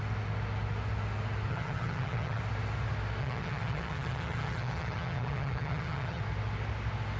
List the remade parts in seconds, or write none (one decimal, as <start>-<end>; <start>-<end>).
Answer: 1.5-2.4; 3.2-6.2